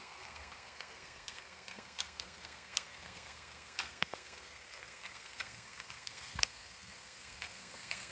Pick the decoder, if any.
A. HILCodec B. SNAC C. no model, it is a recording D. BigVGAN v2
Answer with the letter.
B